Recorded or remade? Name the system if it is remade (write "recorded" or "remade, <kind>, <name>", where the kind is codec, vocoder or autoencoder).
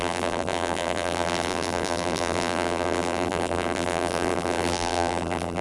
remade, vocoder, BigVGAN v2